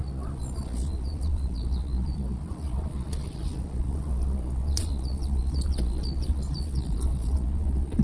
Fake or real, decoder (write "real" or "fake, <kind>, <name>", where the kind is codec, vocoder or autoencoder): fake, vocoder, Vocos